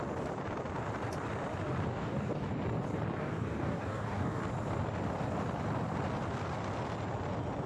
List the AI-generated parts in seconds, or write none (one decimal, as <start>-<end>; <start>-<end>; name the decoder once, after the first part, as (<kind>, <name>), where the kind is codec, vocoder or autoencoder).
1.9-2.5 (codec, DAC); 3.2-4.4